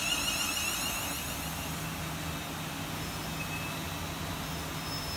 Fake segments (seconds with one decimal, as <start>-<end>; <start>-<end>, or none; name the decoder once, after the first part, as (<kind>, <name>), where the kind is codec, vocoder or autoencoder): none